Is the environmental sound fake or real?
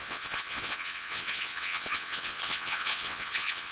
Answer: fake